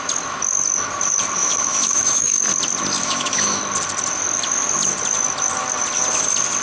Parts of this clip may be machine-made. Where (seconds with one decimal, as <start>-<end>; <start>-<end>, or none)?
1.4-2.4; 3.0-3.6